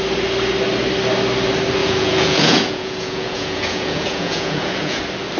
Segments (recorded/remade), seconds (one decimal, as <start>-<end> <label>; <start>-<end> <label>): 0.0-1.8 recorded; 1.8-5.0 remade; 5.0-5.4 recorded

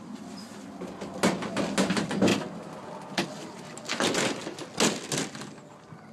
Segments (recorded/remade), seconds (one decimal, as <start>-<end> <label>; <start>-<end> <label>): 0.0-6.1 recorded

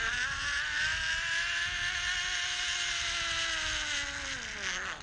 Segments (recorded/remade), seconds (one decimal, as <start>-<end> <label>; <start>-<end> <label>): 0.0-5.0 recorded

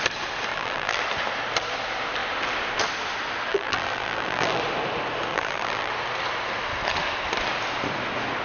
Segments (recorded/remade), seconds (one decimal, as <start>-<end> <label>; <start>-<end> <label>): 0.0-0.5 recorded; 0.5-1.0 remade; 1.0-3.5 recorded; 3.5-4.6 remade; 4.6-5.3 recorded; 5.3-5.9 remade; 5.9-8.4 recorded

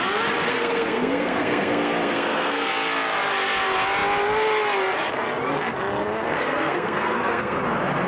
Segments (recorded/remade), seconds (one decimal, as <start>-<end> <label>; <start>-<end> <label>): 0.0-0.5 recorded; 0.5-2.7 remade; 2.7-6.0 recorded; 6.0-7.6 remade; 7.6-8.1 recorded

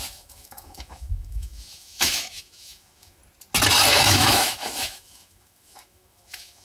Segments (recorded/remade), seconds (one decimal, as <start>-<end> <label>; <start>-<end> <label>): 0.0-3.2 remade; 3.2-3.9 recorded; 3.9-6.6 remade

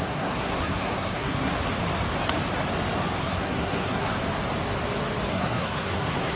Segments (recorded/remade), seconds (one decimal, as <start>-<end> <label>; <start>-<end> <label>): 0.0-1.5 remade; 1.5-3.2 recorded; 3.2-4.1 remade; 4.1-5.3 recorded; 5.3-6.4 remade